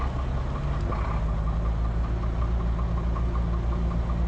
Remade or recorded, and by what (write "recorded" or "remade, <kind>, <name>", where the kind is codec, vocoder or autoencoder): recorded